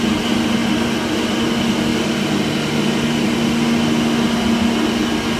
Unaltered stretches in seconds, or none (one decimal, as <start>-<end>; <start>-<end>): 0.0-5.4